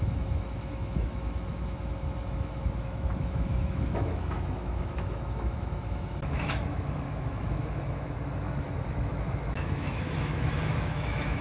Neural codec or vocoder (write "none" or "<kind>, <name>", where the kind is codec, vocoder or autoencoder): autoencoder, DAC-VAE